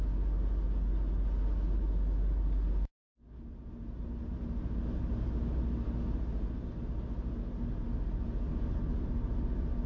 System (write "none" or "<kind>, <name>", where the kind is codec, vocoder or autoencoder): none